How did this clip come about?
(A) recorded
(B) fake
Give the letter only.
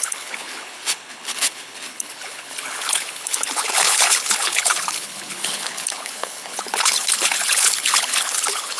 B